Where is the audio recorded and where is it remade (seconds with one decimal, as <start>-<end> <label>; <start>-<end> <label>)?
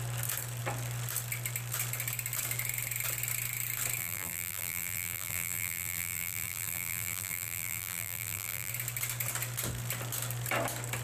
0.0-4.0 recorded; 4.0-8.7 remade; 8.7-11.0 recorded